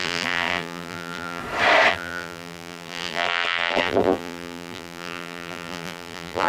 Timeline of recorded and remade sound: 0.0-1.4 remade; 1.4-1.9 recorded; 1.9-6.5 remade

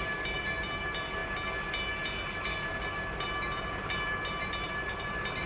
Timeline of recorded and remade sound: 0.0-1.2 remade; 1.2-4.5 recorded; 4.5-5.5 remade

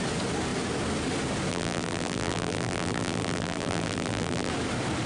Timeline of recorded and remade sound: 0.0-1.5 recorded; 1.5-4.5 remade; 4.5-5.1 recorded

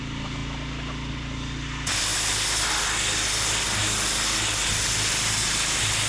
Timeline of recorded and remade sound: 0.0-3.8 recorded; 3.8-4.7 remade; 4.7-6.1 recorded

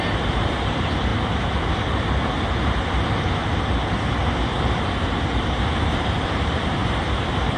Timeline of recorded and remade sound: 0.0-1.1 remade; 1.1-5.6 recorded; 5.6-6.8 remade; 6.8-7.6 recorded

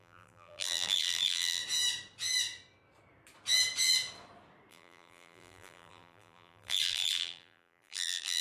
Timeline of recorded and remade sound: 0.0-1.6 remade; 1.6-4.7 recorded; 4.7-8.4 remade

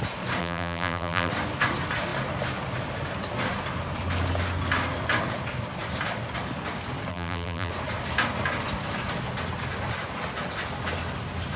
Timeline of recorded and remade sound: 0.0-0.4 recorded; 0.4-1.3 remade; 1.3-7.1 recorded; 7.1-7.7 remade; 7.7-11.6 recorded

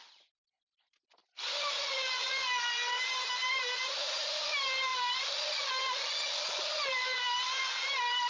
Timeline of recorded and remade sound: 0.0-1.2 recorded; 1.2-1.8 remade; 1.8-3.4 recorded; 3.4-4.4 remade; 4.4-8.3 recorded